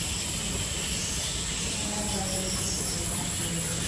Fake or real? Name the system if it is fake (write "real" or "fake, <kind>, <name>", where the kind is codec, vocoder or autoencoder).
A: real